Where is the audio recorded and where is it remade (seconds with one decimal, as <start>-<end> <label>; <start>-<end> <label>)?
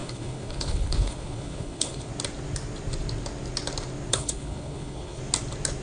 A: 0.0-2.1 remade; 2.1-4.1 recorded; 4.1-5.2 remade; 5.2-5.8 recorded